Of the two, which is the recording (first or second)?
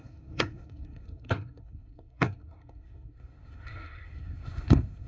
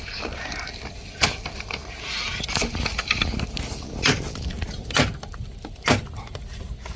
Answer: second